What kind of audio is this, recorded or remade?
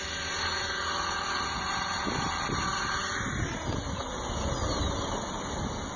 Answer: recorded